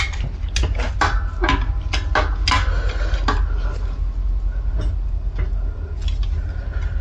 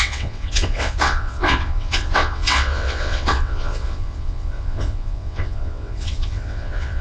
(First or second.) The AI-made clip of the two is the second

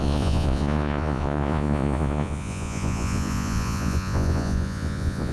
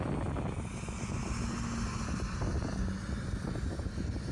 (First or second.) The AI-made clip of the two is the first